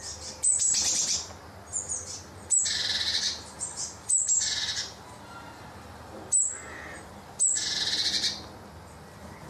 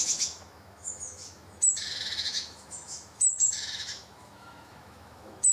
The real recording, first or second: first